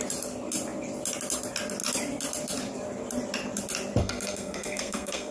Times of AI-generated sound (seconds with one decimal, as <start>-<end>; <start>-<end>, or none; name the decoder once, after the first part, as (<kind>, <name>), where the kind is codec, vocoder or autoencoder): 4.0-5.3 (codec, SNAC)